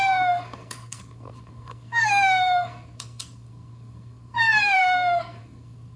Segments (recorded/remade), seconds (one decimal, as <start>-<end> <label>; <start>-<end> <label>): 0.0-6.0 remade